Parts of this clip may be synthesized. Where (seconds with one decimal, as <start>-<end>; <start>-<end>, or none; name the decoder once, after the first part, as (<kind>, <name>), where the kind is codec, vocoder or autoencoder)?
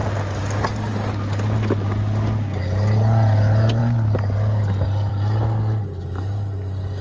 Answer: none